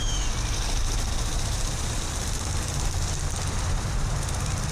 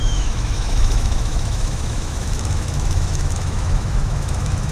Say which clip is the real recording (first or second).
first